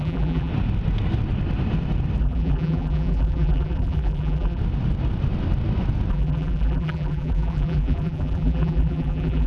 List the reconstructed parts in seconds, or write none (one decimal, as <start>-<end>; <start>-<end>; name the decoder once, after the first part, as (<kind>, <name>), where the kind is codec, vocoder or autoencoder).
0.0-0.5 (vocoder, BigVGAN v2); 2.2-4.6; 6.1-9.5